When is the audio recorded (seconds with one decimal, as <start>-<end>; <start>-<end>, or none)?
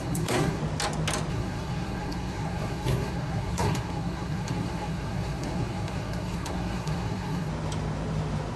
0.6-1.3; 7.5-8.6